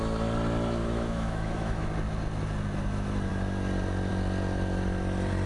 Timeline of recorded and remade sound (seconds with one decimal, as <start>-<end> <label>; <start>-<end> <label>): 0.0-0.8 recorded; 0.8-1.9 remade; 1.9-5.5 recorded